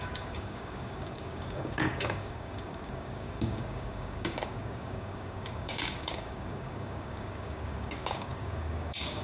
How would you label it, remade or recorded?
remade